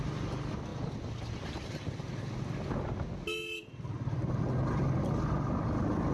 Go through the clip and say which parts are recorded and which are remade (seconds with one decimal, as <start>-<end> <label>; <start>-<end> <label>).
0.0-6.1 recorded